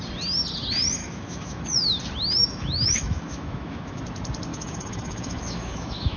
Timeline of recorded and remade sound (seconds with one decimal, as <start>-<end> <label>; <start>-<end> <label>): 0.0-1.0 recorded; 1.0-2.0 remade; 2.0-2.4 recorded; 2.4-4.0 remade; 4.0-4.5 recorded; 4.5-6.2 remade